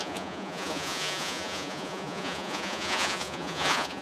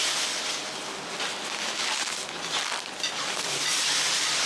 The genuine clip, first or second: second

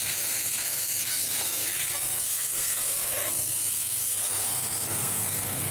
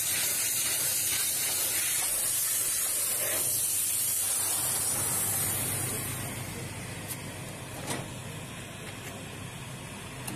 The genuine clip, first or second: second